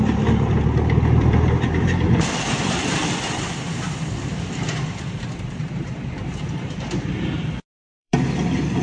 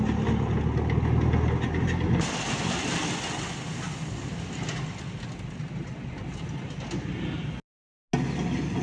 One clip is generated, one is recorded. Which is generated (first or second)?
first